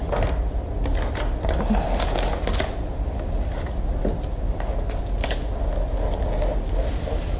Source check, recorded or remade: recorded